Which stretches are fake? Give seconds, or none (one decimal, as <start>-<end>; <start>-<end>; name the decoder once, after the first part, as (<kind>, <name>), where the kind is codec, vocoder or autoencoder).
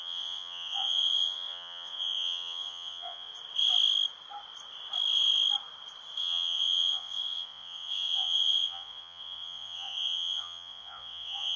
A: 0.0-3.3 (vocoder, Vocos); 6.2-11.6